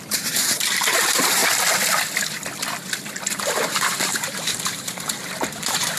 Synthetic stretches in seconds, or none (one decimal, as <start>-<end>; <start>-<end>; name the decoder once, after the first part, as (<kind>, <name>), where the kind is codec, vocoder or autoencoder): 0.0-1.4 (vocoder, BigVGAN v2); 3.1-6.0